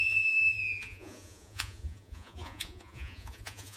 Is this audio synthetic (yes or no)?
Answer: yes